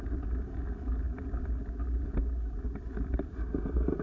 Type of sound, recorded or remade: recorded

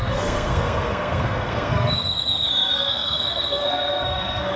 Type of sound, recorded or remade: remade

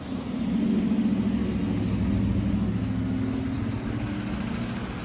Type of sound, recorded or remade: recorded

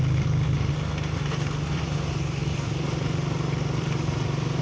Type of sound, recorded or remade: recorded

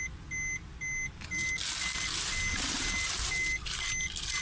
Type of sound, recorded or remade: recorded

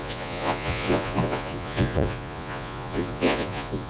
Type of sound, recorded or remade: remade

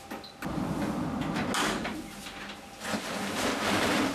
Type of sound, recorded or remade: recorded